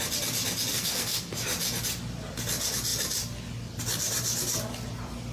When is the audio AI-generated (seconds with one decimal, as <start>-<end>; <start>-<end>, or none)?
0.7-1.3